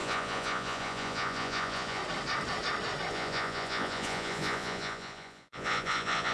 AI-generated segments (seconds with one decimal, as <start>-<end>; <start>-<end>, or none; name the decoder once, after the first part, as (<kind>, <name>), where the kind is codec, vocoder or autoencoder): 0.0-2.0 (vocoder, Vocos); 3.1-6.3